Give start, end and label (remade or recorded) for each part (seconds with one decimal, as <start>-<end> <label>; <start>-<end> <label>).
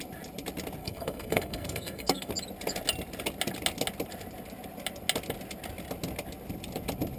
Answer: 0.0-0.8 recorded; 0.8-2.3 remade; 2.3-7.2 recorded